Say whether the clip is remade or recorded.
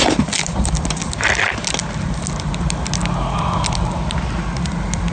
recorded